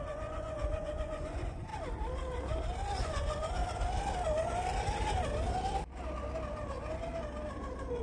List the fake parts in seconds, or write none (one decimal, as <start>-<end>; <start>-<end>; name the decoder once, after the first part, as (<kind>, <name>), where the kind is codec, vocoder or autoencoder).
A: 0.0-1.7 (vocoder, Vocos); 3.0-3.6